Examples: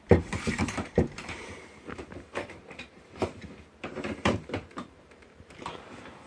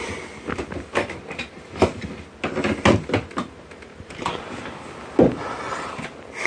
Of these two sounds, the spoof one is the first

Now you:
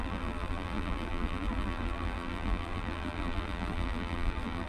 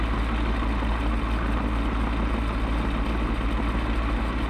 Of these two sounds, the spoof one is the first